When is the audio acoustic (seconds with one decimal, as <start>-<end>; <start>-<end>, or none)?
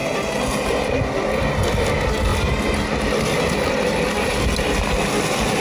0.0-5.6